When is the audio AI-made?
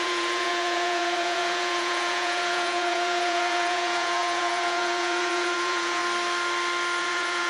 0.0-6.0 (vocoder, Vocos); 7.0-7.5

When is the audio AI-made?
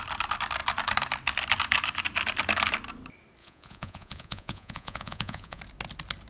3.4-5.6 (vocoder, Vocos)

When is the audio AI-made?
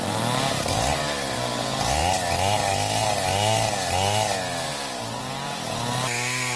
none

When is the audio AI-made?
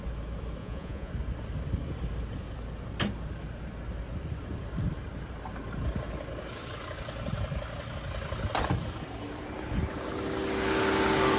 0.6-1.1 (vocoder, Vocos)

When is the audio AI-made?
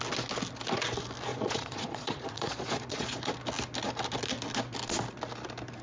1.3-3.3 (vocoder, Vocos)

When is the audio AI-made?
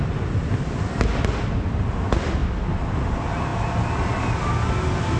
none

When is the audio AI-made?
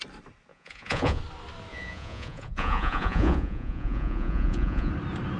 0.5-1.2 (vocoder, Vocos); 1.7-4.9